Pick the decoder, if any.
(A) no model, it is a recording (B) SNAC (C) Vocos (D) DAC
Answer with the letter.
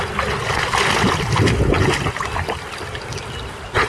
A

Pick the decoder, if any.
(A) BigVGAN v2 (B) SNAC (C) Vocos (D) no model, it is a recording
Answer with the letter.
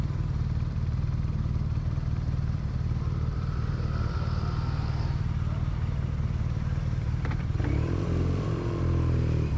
A